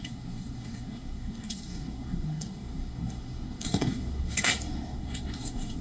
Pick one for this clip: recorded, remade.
remade